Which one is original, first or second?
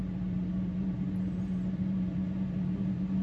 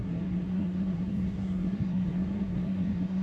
first